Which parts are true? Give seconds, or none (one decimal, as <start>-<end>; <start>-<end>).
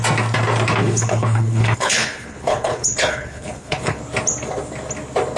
0.0-0.8; 4.0-5.4